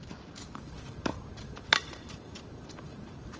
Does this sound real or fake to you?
fake